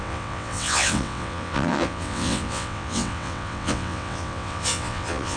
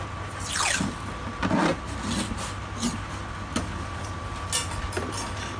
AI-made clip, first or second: first